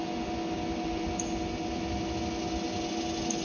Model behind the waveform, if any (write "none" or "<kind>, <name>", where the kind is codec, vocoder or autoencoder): none